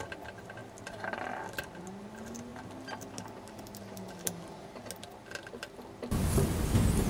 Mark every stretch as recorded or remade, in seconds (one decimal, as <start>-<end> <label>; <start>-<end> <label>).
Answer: 0.0-7.1 recorded